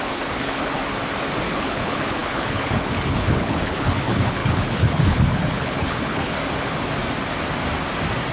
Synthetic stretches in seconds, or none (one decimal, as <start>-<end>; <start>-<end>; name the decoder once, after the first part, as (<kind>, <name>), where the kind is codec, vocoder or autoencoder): 0.0-0.8 (codec, HILCodec); 1.5-6.4

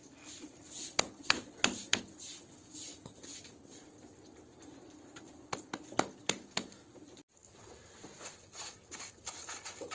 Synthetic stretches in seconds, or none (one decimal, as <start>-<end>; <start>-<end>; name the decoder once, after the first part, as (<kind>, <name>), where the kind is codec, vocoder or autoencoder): none

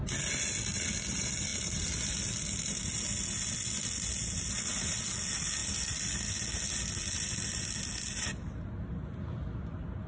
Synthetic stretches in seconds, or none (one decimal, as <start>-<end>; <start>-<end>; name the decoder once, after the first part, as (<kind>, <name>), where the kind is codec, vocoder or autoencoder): none

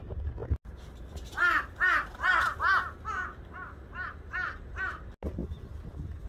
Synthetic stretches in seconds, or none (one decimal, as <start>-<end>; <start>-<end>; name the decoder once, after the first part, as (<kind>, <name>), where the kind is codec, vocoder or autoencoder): none

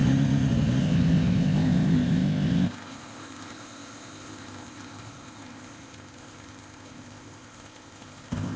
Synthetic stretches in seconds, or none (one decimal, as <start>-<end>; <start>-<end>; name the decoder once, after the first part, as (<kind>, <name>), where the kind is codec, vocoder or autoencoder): 0.8-8.6 (codec, ZipCodec)

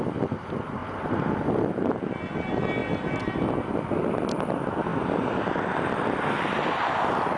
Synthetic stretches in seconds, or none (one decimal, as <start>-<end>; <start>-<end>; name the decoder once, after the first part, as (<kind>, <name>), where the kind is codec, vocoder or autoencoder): none

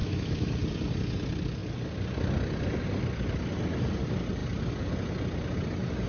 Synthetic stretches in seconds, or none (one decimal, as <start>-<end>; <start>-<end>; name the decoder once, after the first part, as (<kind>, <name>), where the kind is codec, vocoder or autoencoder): 0.0-0.5 (autoencoder, DAC-VAE)